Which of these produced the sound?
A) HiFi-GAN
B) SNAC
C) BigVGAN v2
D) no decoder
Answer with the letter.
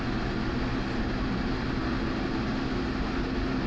D